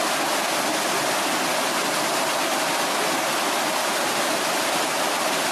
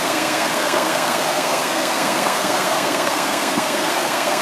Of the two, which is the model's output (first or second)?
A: second